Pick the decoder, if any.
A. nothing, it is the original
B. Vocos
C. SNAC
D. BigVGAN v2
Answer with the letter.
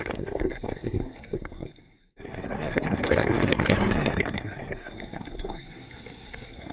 C